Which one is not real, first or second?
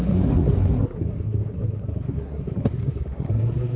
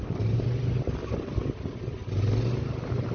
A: first